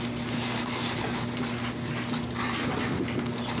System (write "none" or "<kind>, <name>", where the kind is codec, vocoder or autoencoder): none